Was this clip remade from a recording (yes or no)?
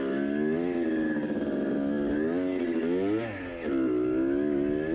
no